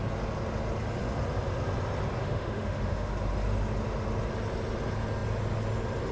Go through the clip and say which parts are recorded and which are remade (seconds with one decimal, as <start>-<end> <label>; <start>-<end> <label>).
0.0-2.2 recorded; 2.2-3.1 remade; 3.1-6.1 recorded